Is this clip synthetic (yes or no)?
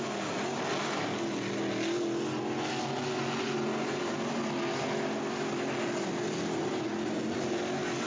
no